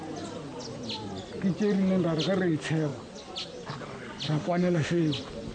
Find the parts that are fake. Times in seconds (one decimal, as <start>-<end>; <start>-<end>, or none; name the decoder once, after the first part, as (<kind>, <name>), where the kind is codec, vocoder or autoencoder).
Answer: 4.4-5.0 (autoencoder, DAC-VAE)